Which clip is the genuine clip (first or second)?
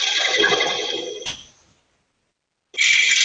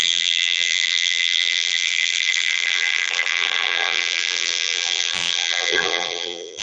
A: first